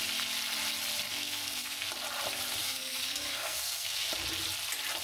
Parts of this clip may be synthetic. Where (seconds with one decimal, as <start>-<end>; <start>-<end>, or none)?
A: 1.1-1.9; 2.6-4.1